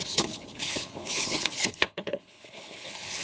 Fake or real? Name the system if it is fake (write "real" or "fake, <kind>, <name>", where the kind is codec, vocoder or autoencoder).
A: fake, codec, HILCodec